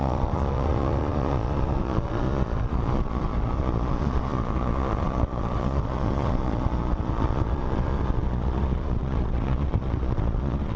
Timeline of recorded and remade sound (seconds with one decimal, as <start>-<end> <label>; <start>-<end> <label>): 0.0-10.8 remade